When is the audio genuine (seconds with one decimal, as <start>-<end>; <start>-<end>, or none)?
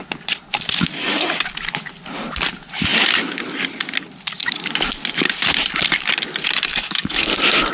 0.0-6.7; 7.3-7.7